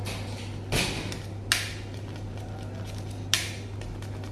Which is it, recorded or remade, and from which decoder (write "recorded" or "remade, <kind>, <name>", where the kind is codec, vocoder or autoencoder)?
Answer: recorded